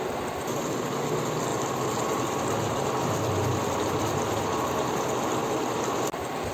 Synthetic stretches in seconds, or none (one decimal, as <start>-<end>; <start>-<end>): 1.5-4.4